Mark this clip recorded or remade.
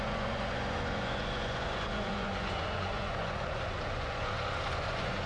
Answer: remade